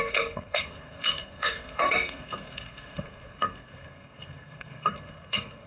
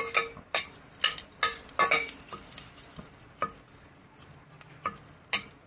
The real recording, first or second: second